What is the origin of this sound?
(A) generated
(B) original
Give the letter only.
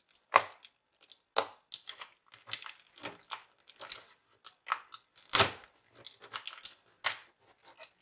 B